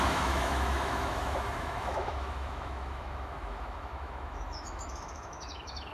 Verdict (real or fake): fake